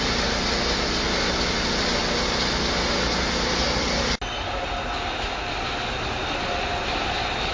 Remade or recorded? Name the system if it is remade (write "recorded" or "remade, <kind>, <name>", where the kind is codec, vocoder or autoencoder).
recorded